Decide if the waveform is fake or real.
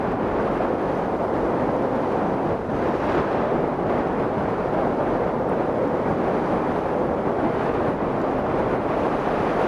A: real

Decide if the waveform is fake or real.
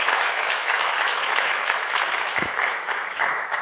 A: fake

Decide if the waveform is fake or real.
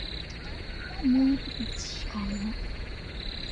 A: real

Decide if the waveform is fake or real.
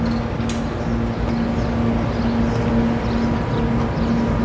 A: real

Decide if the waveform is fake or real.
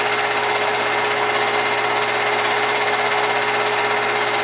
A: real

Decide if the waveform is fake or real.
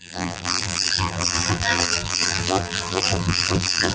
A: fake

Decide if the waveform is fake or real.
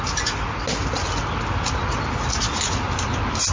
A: real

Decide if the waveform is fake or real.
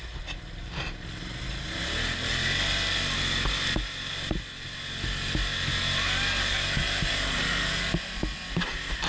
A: real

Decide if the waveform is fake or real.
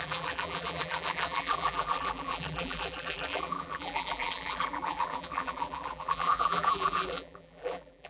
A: fake